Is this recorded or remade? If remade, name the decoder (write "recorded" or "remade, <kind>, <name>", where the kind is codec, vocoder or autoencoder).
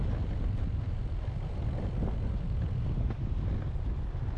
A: recorded